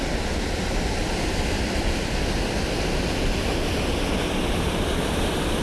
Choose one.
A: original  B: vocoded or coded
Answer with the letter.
A